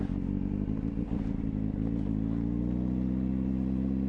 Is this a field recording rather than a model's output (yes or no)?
yes